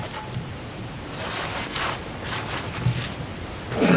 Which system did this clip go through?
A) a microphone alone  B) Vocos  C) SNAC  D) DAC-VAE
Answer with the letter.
A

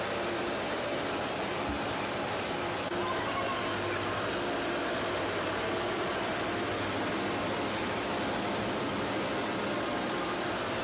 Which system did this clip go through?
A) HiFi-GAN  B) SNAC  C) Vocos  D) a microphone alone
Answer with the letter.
D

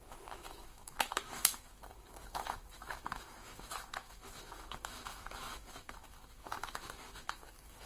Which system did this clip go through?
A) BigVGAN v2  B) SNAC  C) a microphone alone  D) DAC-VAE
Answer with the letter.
D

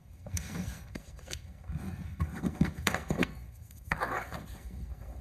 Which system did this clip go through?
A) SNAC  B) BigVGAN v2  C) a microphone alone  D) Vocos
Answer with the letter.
A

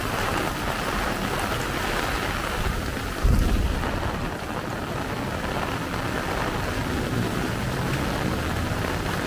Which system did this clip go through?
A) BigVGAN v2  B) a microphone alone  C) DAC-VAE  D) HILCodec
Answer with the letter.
B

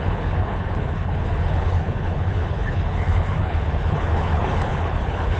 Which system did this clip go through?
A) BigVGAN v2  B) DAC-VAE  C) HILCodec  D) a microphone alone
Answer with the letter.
C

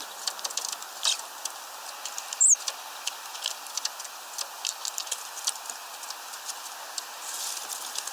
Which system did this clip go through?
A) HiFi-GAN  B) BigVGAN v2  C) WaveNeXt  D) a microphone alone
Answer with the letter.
D